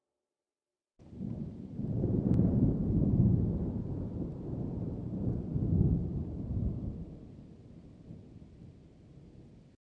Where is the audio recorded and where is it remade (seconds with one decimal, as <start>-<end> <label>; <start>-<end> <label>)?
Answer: 0.0-0.7 recorded; 0.7-2.7 remade; 2.7-4.3 recorded; 4.3-5.2 remade; 5.2-6.0 recorded; 6.0-6.7 remade; 6.7-10.0 recorded